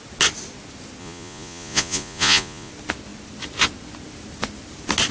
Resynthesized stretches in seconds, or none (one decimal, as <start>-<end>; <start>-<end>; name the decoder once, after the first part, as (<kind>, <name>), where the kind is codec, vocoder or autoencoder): 1.0-2.7 (vocoder, Vocos)